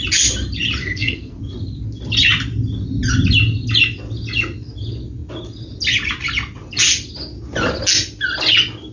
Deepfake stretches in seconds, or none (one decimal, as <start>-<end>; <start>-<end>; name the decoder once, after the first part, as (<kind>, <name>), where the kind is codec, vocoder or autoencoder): 0.8-1.4 (codec, SNAC)